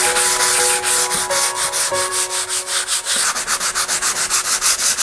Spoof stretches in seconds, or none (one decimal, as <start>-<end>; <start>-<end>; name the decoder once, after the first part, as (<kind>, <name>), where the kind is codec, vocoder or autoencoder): none